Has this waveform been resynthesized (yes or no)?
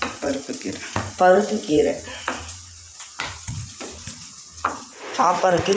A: yes